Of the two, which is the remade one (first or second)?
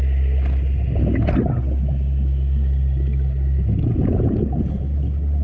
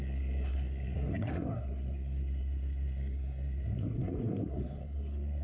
second